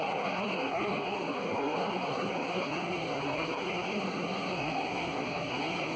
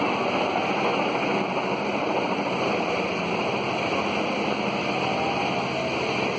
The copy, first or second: first